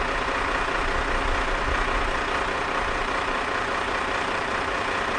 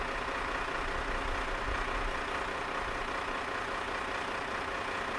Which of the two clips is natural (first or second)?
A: second